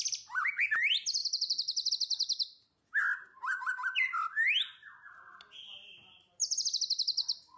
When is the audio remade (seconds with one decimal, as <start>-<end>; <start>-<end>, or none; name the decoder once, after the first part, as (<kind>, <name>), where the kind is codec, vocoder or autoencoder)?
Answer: none